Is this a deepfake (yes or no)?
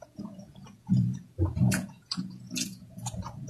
yes